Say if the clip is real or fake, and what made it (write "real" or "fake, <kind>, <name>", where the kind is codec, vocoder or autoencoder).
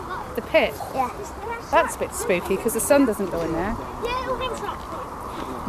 real